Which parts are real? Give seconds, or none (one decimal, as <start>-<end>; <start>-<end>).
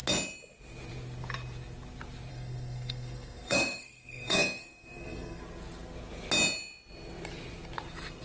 0.0-2.3; 5.4-8.2